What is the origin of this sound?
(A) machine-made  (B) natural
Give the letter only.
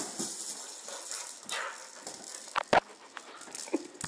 B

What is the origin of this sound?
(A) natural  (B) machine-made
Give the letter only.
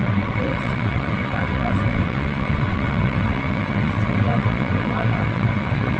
B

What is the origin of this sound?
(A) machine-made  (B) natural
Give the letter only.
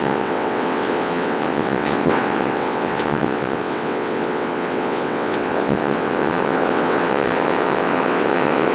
A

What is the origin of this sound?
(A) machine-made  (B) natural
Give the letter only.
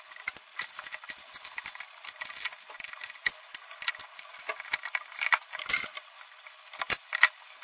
B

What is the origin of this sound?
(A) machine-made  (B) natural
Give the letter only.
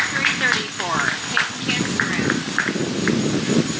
B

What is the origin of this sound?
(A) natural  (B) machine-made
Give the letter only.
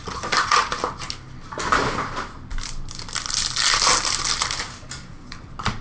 A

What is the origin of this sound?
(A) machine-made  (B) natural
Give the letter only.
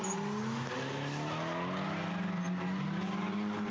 B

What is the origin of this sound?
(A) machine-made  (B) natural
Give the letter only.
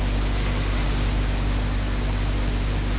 B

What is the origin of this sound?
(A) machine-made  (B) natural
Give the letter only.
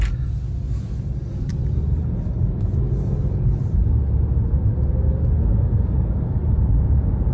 B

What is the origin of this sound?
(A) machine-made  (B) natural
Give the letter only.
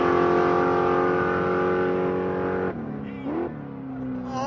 B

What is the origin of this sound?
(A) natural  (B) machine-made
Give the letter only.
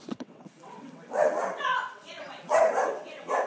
B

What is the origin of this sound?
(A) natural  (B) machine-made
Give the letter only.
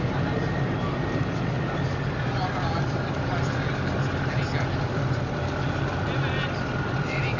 A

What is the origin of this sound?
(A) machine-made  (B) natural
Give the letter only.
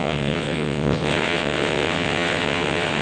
A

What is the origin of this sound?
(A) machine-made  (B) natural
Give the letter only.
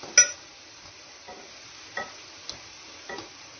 B